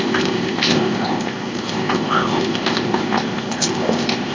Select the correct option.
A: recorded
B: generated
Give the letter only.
B